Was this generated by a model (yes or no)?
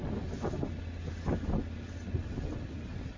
no